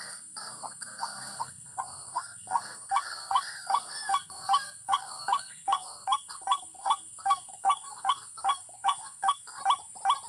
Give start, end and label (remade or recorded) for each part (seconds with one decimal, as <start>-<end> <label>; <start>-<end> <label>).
0.0-9.6 remade; 9.6-10.3 recorded